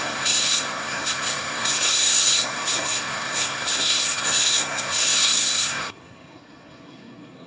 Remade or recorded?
remade